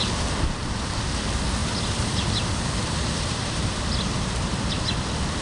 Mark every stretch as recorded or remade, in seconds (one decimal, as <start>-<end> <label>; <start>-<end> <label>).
0.0-1.6 recorded; 1.6-4.7 remade; 4.7-5.4 recorded